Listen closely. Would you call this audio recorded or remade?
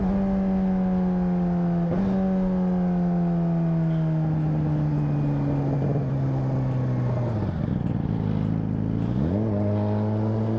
recorded